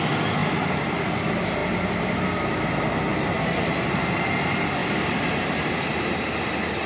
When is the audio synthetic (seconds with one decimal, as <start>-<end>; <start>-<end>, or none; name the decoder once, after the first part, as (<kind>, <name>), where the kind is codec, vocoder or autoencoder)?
0.4-1.0 (vocoder, BigVGAN v2); 3.1-4.2; 4.8-6.1